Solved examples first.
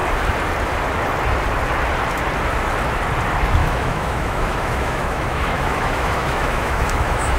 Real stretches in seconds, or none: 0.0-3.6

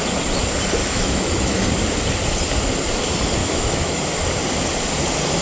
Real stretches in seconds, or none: 0.0-0.8; 1.7-3.4; 4.0-5.4

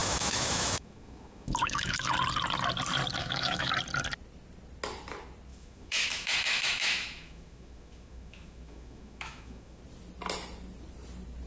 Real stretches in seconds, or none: 2.1-3.2; 3.7-5.5; 9.8-11.5

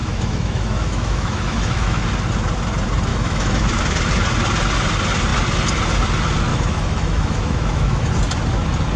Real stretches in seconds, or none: 2.0-3.1; 3.8-6.5; 8.1-9.0

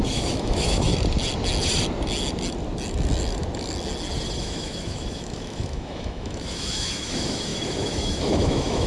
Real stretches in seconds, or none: 0.9-4.4

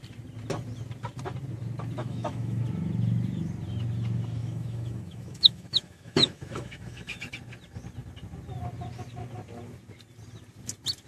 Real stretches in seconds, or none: 0.0-2.0; 2.6-4.4; 7.3-11.1